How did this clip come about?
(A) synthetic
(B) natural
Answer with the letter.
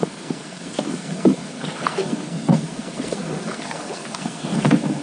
A